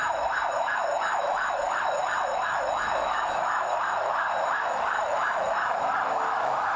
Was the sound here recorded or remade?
remade